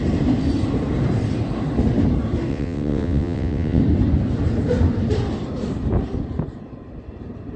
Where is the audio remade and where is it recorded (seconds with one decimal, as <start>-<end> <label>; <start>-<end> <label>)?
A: 0.0-2.5 recorded; 2.5-3.8 remade; 3.8-7.6 recorded